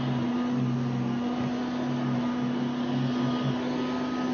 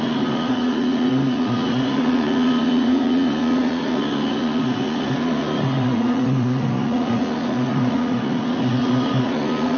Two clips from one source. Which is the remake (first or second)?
second